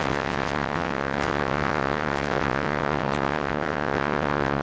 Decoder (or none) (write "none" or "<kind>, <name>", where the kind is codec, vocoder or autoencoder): vocoder, WaveNeXt